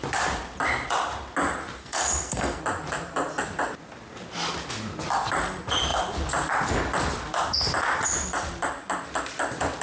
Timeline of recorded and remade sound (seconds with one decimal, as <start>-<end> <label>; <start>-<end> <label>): 0.0-1.8 recorded; 1.8-2.6 remade; 2.6-9.8 recorded